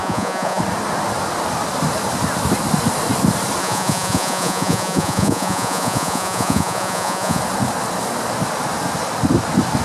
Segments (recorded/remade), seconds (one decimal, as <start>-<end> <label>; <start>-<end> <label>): 0.0-0.6 remade; 0.6-3.6 recorded; 3.6-7.4 remade; 7.4-9.8 recorded